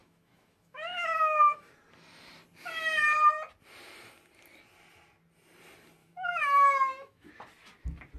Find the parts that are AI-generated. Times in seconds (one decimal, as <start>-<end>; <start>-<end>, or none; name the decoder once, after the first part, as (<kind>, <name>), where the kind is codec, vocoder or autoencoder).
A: 0.0-1.7 (autoencoder, DAC-VAE); 6.0-7.3

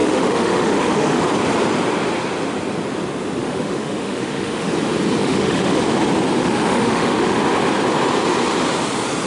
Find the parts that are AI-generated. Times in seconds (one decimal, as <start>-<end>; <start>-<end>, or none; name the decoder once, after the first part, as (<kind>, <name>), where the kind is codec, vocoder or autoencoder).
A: 0.0-1.2 (autoencoder, DAC-VAE); 3.4-4.7; 5.2-5.8; 6.4-7.4